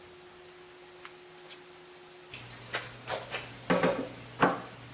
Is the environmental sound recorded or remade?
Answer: recorded